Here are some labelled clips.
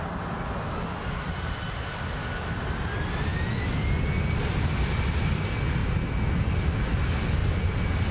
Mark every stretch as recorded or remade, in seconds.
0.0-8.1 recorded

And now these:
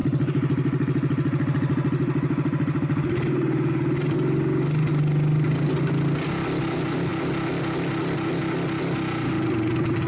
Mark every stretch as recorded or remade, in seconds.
0.0-10.1 recorded

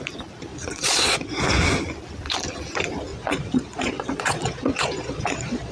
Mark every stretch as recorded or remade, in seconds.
0.0-0.5 recorded; 0.5-1.4 remade; 1.4-3.1 recorded; 3.1-5.7 remade

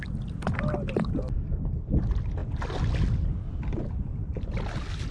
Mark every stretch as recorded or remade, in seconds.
0.0-5.1 recorded

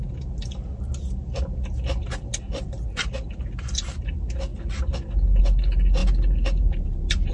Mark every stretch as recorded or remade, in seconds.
0.0-7.3 recorded

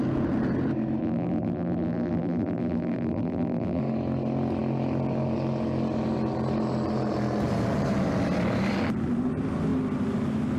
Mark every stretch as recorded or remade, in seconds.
0.0-1.0 recorded; 1.0-3.8 remade; 3.8-10.6 recorded

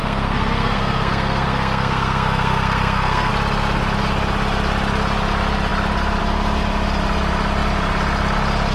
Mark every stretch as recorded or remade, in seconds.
0.0-3.3 remade; 3.3-8.7 recorded

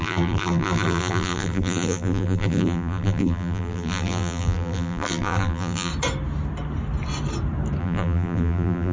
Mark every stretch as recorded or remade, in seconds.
0.0-5.9 remade; 5.9-7.8 recorded; 7.8-8.9 remade